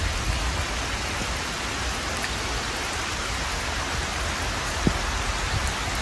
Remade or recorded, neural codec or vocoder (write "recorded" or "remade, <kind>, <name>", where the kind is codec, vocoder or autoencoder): recorded